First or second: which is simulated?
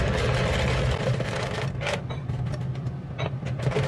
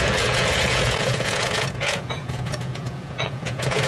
second